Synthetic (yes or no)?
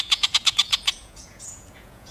yes